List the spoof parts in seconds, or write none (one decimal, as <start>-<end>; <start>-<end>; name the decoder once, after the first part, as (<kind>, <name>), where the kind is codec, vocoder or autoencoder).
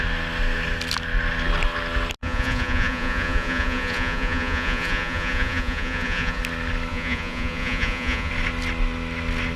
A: 2.2-6.4 (vocoder, Vocos); 6.9-8.3